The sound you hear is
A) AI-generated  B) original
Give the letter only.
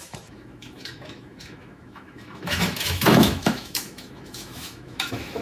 A